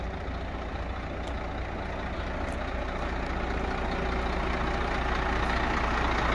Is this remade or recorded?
recorded